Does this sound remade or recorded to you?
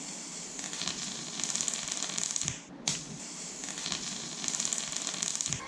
recorded